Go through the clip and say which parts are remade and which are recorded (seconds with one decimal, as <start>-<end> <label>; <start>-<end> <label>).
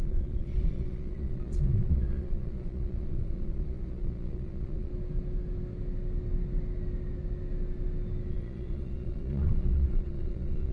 0.0-4.9 remade; 4.9-8.3 recorded; 8.3-10.7 remade